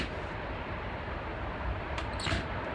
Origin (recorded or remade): recorded